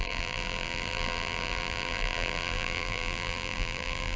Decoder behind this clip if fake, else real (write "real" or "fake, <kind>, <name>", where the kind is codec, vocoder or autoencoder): fake, vocoder, BigVGAN v2